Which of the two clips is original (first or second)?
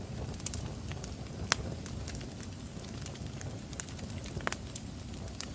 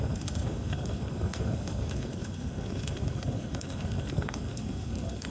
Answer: first